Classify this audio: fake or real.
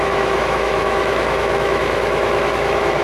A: fake